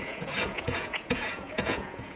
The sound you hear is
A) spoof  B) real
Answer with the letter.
A